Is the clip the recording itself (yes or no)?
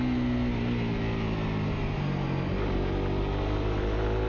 yes